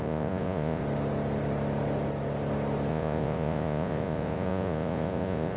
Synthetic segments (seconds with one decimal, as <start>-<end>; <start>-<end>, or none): 0.0-0.8; 2.9-5.6